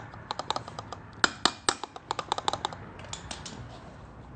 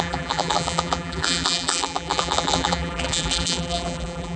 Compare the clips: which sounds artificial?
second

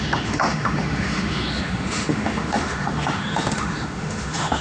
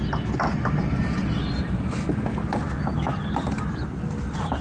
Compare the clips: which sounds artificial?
first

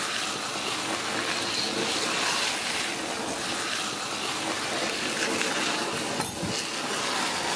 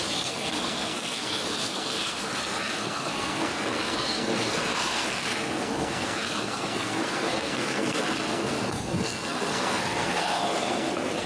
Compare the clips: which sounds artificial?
second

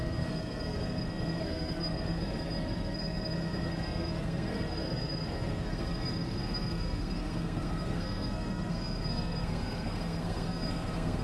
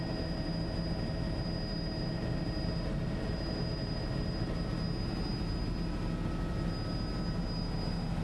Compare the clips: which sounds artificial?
first